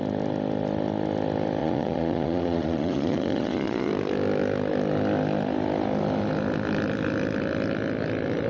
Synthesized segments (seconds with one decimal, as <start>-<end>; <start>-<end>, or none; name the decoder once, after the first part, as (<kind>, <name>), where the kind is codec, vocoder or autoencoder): 1.6-3.9 (vocoder, Vocos)